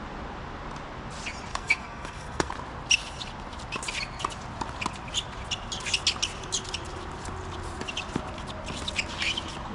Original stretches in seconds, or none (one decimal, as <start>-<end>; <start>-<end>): 0.0-1.5; 2.5-9.7